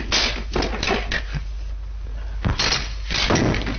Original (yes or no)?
yes